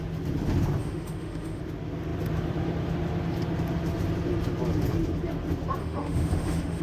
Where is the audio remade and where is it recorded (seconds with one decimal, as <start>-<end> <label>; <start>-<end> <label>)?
0.0-0.8 recorded; 0.8-1.6 remade; 1.6-5.8 recorded; 5.8-6.8 remade